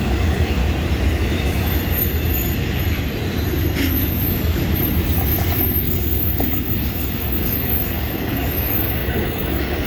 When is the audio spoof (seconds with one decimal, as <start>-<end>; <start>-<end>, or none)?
0.0-0.6; 4.1-4.6; 5.8-9.9

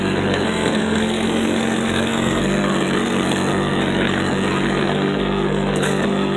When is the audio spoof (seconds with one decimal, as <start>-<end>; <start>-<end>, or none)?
0.0-6.4

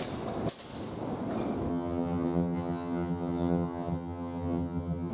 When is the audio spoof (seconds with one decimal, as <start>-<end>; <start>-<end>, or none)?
1.7-5.1

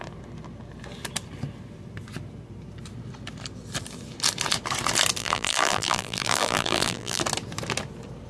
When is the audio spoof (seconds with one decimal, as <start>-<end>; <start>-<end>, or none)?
5.2-7.2

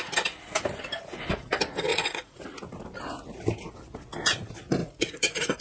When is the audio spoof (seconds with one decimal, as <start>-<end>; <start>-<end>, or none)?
1.9-2.4; 4.8-5.6

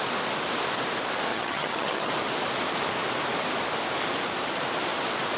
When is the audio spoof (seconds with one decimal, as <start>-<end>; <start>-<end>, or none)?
1.3-2.1